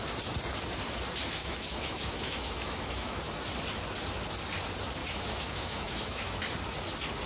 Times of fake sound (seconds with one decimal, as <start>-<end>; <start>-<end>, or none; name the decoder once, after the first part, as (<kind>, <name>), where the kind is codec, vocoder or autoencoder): 1.4-3.2 (autoencoder, DAC-VAE); 5.0-6.4